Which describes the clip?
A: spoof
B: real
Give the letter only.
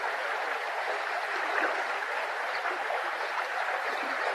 A